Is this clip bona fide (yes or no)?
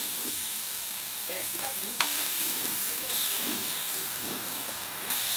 no